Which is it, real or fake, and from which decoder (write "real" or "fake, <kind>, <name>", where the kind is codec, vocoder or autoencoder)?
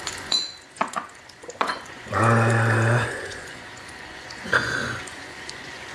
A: fake, vocoder, Vocos